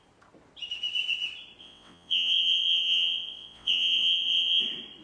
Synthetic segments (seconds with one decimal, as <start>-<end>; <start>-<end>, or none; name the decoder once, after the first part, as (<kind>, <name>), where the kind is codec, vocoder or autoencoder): 1.6-4.6 (vocoder, WaveNeXt)